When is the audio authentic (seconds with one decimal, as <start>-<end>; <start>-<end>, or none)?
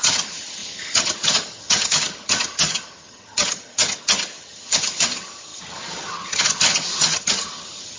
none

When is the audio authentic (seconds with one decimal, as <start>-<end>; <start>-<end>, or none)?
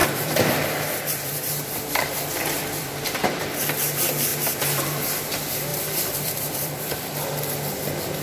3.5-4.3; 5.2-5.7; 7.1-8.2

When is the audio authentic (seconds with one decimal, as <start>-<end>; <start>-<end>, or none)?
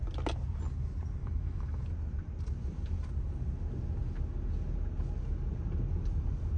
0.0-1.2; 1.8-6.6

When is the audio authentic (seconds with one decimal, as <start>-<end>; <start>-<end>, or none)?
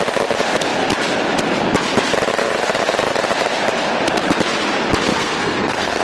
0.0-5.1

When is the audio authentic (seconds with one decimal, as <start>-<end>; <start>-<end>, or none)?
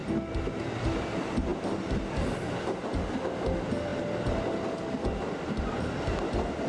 0.0-6.7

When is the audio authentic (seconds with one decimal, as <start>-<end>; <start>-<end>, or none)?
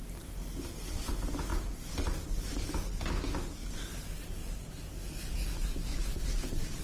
0.0-4.4; 4.9-5.9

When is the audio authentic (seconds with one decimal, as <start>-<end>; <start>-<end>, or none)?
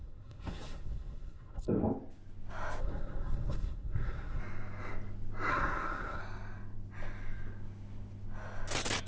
1.8-2.8; 4.4-5.5; 6.2-9.1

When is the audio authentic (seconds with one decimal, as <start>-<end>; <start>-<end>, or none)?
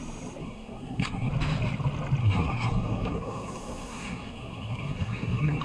0.0-0.4; 1.3-2.2